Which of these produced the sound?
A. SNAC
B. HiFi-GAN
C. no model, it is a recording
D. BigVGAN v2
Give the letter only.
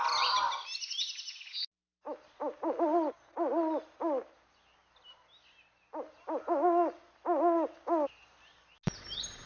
C